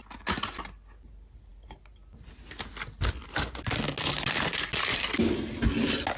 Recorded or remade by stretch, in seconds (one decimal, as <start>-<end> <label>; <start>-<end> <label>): 0.0-6.2 recorded